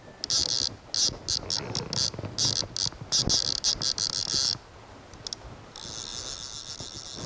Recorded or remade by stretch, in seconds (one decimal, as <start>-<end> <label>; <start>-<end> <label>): 0.0-7.3 recorded